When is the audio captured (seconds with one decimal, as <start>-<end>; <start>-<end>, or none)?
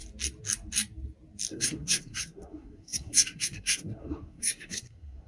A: 0.0-1.5